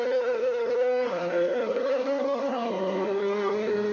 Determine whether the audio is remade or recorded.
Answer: remade